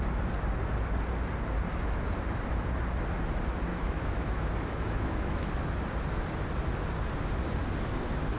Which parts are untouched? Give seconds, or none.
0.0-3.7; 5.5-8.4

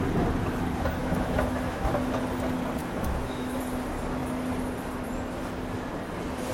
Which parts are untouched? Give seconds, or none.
0.0-1.0; 1.9-2.8; 3.6-6.5

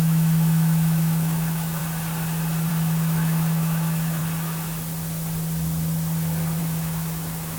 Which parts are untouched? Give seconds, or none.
1.8-2.7; 4.2-6.6

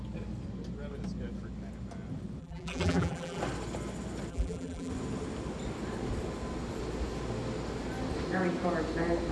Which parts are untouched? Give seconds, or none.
0.0-2.4; 3.4-4.3; 4.9-9.3

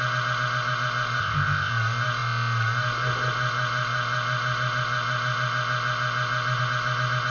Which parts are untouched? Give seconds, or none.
0.0-1.2; 1.7-7.3

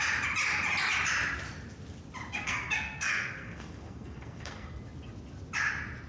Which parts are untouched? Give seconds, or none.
0.0-2.3; 4.8-6.1

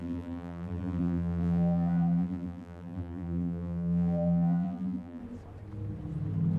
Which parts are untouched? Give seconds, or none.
5.2-6.6

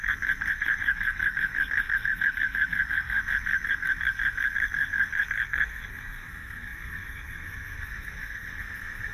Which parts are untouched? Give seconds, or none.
none